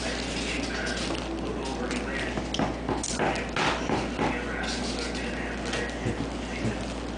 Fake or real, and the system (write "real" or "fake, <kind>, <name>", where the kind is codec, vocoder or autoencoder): real